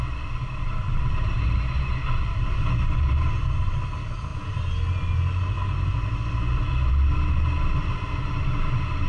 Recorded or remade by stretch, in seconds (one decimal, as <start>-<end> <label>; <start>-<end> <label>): 0.0-9.1 recorded